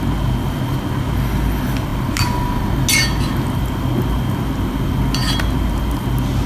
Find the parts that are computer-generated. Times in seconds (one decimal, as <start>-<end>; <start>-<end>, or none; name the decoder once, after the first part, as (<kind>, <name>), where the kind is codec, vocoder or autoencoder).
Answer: none